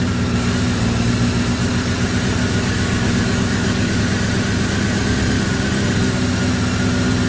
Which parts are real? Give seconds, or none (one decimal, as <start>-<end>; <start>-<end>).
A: 0.0-2.4; 4.0-7.3